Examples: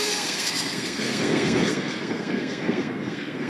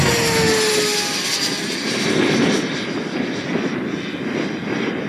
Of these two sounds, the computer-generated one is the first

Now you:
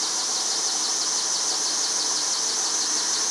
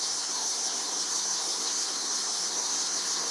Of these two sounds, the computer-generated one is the second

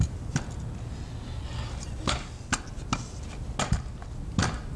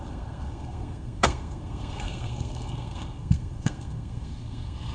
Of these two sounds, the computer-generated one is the second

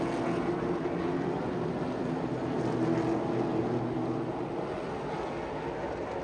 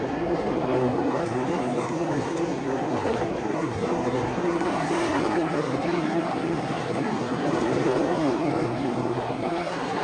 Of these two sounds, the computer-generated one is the second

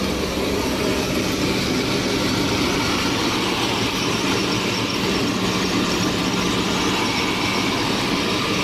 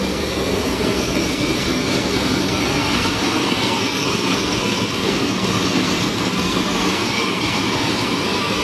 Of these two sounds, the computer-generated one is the second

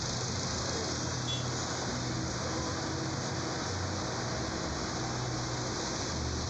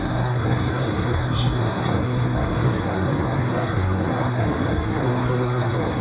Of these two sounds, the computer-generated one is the second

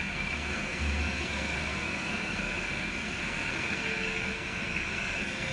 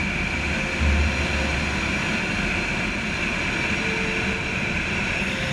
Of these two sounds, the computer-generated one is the first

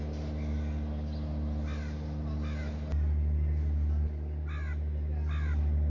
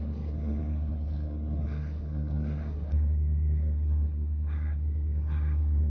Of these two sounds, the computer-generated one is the second